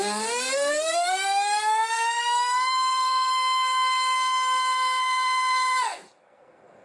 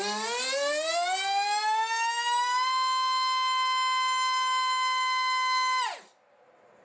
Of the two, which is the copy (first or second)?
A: first